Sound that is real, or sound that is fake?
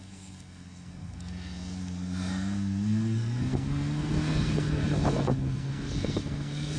fake